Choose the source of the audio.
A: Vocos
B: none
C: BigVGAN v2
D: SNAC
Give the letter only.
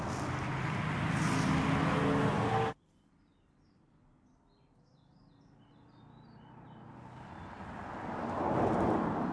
B